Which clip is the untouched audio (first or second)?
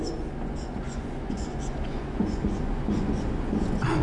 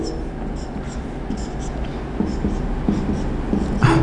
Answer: second